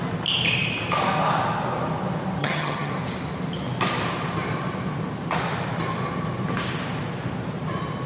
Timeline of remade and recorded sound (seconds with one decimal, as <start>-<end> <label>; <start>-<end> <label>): 0.0-2.4 recorded; 2.4-2.9 remade; 2.9-8.1 recorded

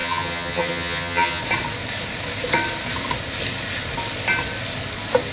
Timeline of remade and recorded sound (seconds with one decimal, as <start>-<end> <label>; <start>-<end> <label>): 0.0-1.4 remade; 1.4-5.3 recorded

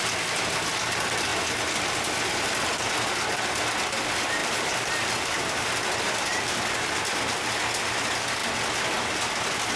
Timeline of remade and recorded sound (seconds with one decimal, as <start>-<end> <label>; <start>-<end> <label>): 0.0-4.4 recorded; 4.4-5.7 remade; 5.7-9.8 recorded

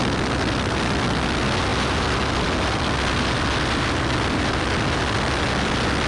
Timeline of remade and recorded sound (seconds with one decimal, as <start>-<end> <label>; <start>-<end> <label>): 0.0-6.1 recorded